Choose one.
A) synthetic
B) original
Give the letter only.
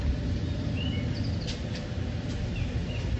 B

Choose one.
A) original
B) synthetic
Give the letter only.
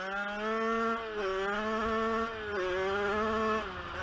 A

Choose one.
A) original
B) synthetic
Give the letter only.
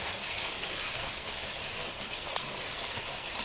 B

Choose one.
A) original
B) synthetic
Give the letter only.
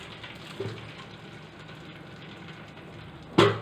A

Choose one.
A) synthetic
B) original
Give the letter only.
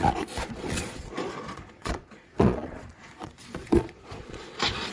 A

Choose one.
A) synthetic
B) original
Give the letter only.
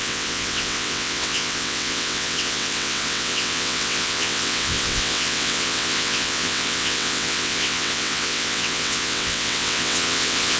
A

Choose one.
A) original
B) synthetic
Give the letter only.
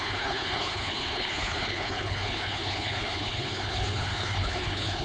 B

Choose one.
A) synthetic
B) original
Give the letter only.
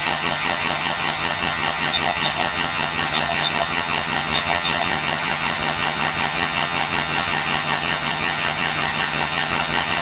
A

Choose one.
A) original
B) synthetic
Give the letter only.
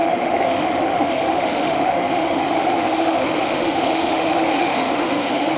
B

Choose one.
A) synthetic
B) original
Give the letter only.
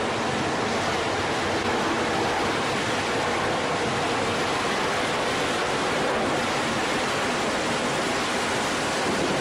B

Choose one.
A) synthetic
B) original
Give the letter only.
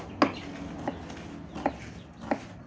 B